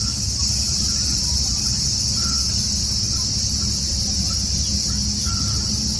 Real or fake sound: real